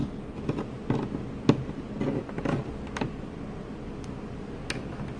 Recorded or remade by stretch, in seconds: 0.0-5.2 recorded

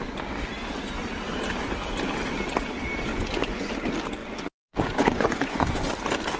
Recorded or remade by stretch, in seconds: 0.0-3.1 recorded; 3.1-3.7 remade; 3.7-4.2 recorded; 4.2-5.9 remade; 5.9-6.4 recorded